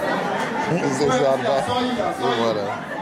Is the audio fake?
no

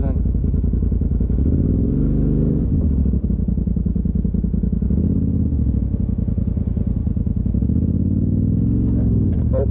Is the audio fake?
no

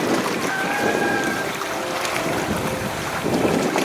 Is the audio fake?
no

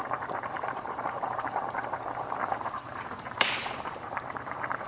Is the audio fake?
yes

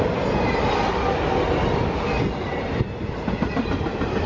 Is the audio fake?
no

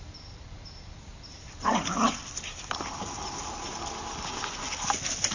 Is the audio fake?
no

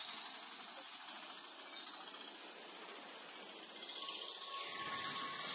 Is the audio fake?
no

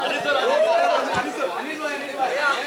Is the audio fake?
yes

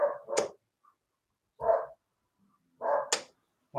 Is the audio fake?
no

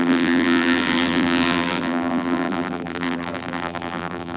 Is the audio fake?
yes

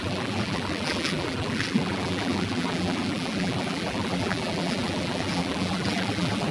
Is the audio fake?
yes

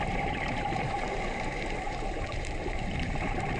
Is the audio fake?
yes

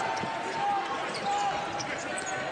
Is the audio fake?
yes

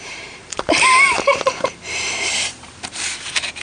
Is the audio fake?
yes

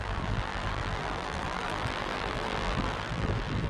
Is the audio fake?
yes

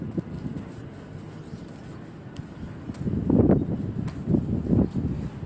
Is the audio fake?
no